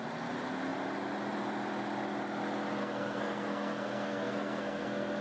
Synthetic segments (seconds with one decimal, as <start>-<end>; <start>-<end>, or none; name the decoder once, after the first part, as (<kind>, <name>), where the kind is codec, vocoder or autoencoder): 2.8-5.2 (codec, SNAC)